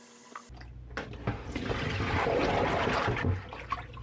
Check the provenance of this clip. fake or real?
real